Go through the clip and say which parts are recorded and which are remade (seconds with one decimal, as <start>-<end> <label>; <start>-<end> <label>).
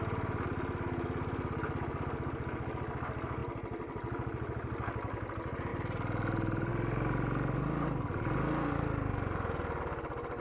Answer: 0.0-5.7 recorded; 5.7-6.7 remade; 6.7-10.4 recorded